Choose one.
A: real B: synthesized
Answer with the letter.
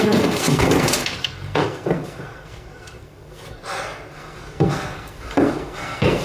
B